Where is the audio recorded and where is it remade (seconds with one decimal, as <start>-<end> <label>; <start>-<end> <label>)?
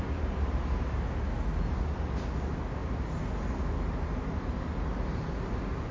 0.0-5.9 recorded